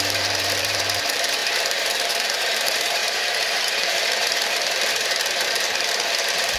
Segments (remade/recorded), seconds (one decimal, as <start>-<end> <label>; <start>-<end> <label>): 0.0-6.6 remade